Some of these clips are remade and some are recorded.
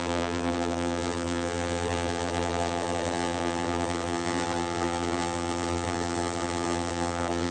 remade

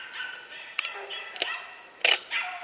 recorded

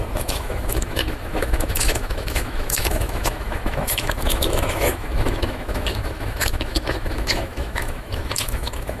remade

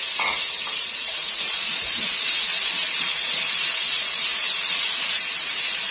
remade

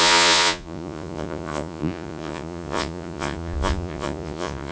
remade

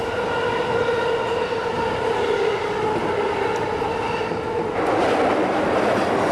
recorded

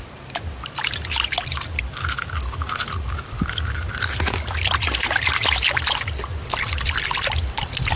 recorded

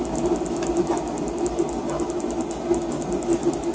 recorded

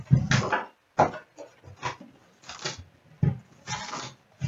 recorded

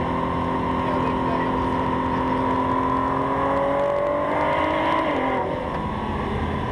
recorded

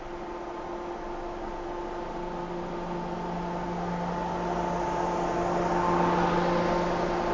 recorded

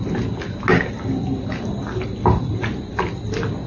recorded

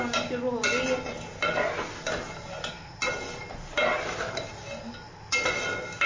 recorded